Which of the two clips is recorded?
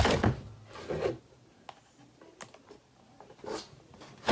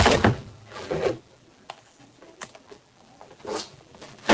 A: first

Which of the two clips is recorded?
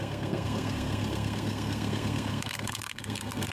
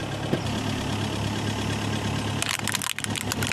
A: second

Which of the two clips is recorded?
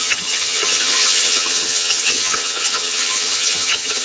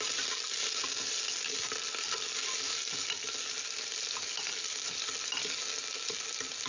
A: second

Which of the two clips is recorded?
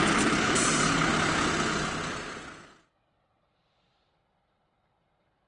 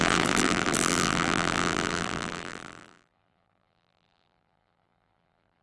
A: first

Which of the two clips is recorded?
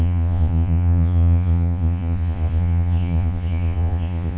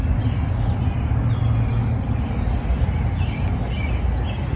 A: second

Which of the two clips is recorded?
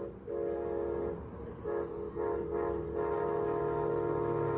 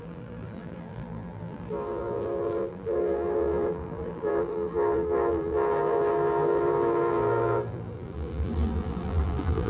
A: first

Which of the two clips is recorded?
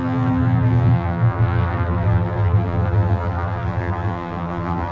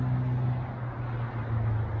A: second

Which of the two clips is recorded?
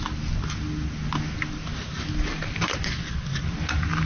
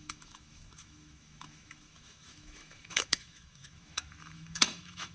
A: first